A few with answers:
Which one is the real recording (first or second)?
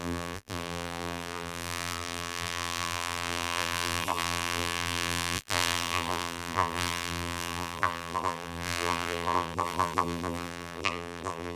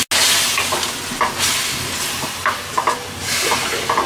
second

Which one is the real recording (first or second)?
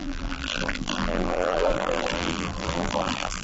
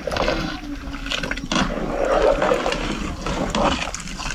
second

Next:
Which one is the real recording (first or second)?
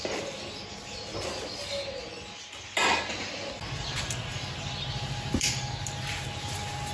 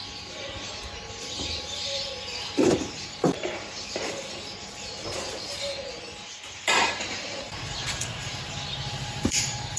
first